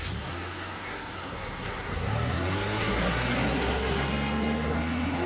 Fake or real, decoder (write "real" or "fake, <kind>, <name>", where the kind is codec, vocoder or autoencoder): fake, codec, SNAC